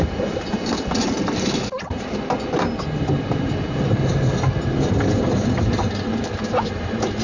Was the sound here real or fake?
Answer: real